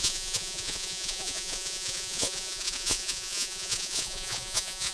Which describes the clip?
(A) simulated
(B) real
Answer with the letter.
A